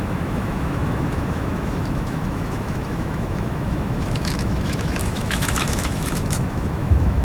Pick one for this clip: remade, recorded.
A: remade